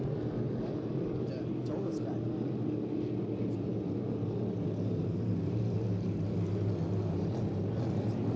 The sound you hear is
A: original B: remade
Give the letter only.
A